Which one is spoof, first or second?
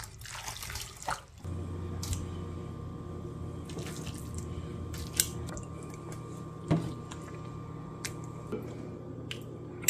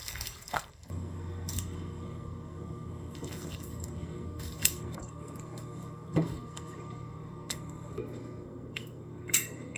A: second